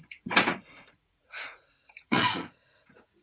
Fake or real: fake